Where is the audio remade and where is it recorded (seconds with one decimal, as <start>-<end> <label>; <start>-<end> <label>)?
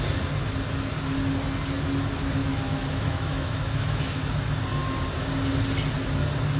0.0-2.4 recorded; 2.4-4.2 remade; 4.2-6.6 recorded